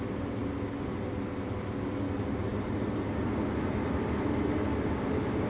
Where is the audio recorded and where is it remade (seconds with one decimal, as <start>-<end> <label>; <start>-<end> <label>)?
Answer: 0.0-5.5 recorded